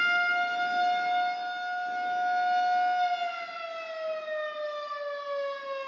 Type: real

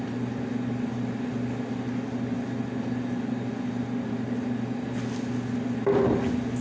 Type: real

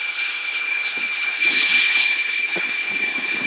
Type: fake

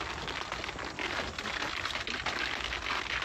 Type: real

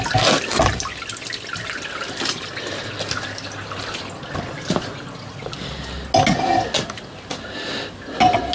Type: real